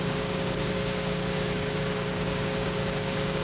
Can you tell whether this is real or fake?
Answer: fake